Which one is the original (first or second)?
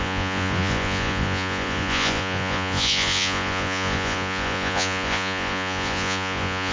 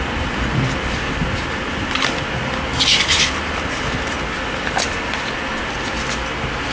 second